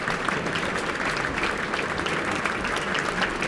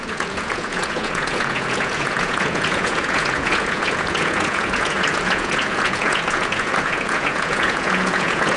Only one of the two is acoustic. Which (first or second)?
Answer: first